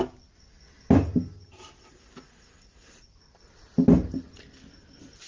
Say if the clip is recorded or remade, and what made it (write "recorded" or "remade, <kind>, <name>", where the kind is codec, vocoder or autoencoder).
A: recorded